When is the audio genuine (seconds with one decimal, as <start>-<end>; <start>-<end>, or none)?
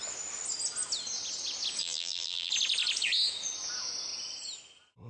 0.0-1.8; 2.5-5.1